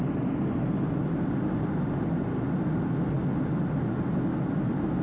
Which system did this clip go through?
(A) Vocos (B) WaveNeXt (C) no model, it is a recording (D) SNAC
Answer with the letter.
C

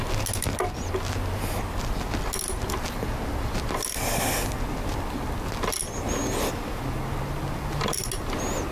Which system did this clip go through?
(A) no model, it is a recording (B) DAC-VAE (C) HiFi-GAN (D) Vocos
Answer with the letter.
A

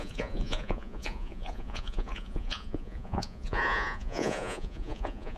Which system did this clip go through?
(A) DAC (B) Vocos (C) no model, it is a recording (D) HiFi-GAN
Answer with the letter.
B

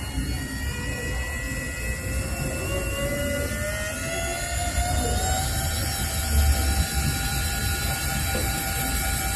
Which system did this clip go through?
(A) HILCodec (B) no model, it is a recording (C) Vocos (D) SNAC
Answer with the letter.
B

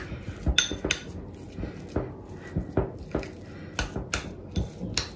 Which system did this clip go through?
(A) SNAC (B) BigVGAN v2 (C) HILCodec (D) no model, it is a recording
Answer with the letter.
D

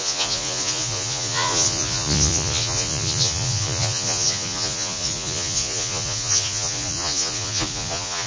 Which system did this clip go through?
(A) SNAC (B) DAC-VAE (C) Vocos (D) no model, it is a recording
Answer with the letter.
C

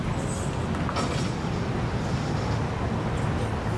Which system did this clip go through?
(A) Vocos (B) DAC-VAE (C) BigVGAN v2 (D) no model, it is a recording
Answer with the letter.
D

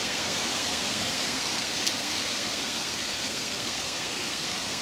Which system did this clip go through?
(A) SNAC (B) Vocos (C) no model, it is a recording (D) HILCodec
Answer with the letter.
A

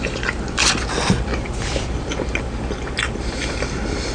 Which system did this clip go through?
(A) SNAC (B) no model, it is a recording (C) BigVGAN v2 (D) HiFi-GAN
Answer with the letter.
B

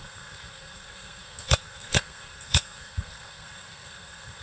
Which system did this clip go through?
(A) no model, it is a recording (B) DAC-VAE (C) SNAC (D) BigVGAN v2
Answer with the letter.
C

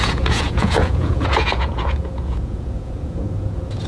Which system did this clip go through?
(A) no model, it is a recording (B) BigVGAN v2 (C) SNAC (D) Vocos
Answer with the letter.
D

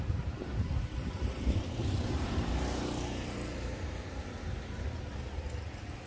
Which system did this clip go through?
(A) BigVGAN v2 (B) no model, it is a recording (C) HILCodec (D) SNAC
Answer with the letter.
A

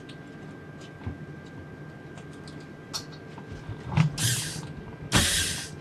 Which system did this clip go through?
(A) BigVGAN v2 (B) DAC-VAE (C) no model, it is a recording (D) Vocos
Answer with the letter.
C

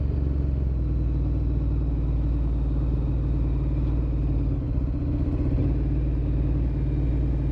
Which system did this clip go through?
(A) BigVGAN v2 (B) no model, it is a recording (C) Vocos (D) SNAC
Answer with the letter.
B